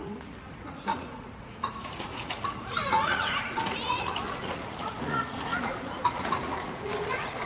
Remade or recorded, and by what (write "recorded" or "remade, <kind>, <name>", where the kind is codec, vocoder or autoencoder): remade, vocoder, Vocos